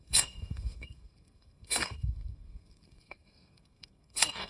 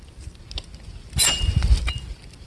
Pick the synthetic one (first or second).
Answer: first